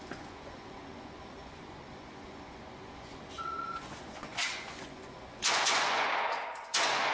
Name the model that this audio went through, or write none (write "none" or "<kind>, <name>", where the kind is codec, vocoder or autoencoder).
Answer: vocoder, Vocos